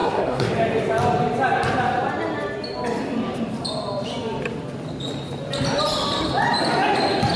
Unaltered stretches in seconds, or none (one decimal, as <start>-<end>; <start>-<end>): 0.5-7.4